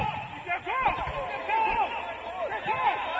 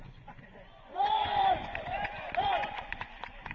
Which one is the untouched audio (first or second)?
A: first